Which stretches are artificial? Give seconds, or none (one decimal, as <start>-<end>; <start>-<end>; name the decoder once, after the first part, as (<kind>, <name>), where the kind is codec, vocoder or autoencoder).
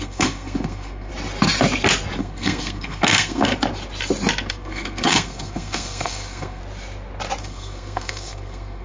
0.0-1.1 (codec, SNAC); 2.2-3.5; 4.5-6.6; 7.4-8.8